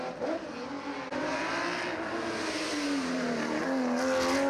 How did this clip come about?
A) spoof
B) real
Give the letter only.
B